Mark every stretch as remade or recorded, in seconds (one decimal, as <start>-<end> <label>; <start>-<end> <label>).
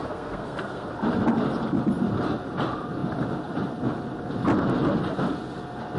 0.0-0.9 remade; 0.9-6.0 recorded